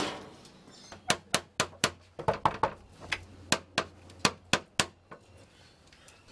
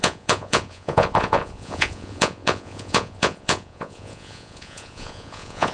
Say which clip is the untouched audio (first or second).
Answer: first